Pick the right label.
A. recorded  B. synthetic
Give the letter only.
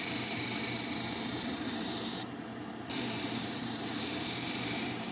B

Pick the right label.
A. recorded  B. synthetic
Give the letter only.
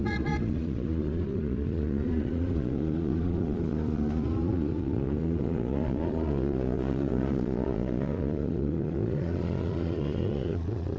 B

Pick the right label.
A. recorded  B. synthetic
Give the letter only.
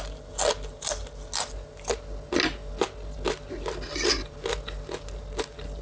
A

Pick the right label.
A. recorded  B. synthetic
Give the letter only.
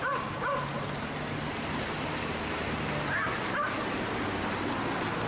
A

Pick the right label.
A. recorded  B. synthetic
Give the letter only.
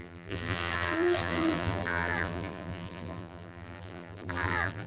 B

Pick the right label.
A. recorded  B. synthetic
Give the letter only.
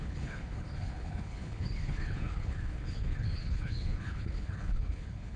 B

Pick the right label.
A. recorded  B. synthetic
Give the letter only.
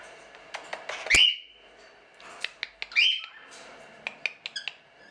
A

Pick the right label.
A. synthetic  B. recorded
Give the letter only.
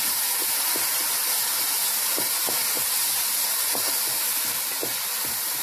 B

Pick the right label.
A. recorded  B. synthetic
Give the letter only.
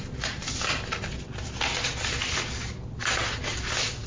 A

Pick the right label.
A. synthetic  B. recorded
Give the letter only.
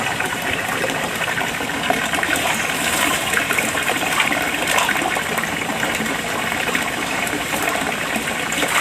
A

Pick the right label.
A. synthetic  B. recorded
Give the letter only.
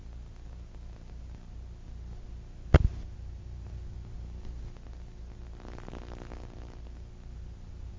B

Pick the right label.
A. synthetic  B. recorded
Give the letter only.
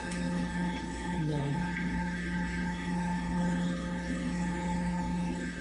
A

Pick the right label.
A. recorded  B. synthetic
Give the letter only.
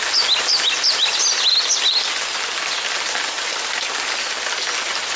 A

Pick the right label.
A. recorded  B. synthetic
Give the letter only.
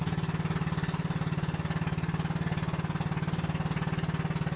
A